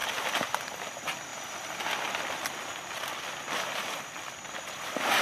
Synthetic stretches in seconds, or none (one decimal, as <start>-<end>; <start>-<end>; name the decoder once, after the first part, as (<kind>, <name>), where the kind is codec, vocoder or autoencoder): none